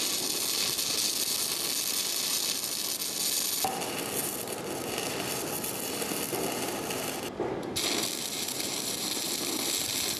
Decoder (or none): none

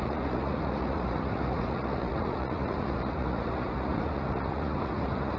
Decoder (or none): vocoder, Vocos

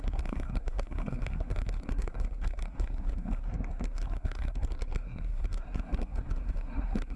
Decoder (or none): codec, SNAC